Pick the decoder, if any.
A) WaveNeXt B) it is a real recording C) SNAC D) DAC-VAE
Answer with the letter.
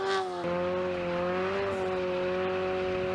B